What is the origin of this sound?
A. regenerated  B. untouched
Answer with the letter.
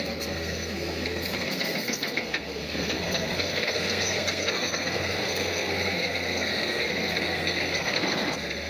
A